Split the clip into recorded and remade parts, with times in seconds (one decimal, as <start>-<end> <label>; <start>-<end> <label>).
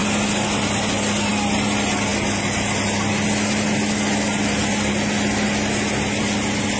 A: 0.0-6.8 recorded